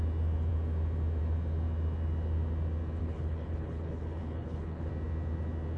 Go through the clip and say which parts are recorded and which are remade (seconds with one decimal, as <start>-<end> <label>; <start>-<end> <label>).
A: 0.0-3.0 recorded; 3.0-4.9 remade; 4.9-5.8 recorded